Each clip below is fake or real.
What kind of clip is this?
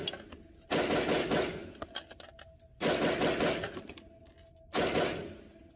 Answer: real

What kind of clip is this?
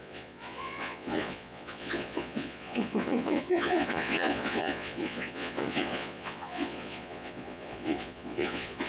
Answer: fake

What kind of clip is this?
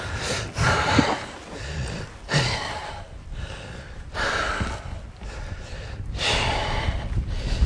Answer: fake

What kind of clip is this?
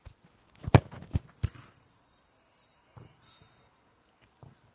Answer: real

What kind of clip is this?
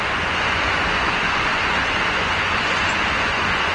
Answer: fake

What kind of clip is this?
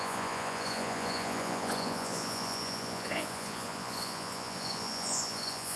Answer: fake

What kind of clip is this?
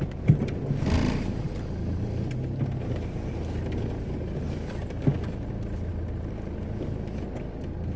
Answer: real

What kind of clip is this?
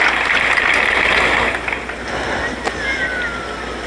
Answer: real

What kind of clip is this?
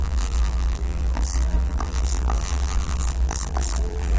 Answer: fake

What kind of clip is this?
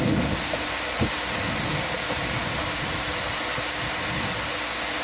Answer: real